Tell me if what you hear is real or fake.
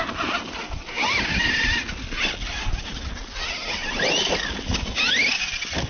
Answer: real